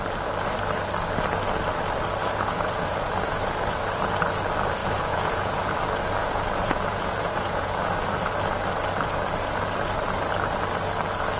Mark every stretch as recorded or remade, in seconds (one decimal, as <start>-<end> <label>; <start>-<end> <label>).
0.0-2.2 recorded; 2.2-3.4 remade; 3.4-4.8 recorded; 4.8-5.6 remade; 5.6-6.2 recorded; 6.2-7.9 remade; 7.9-11.4 recorded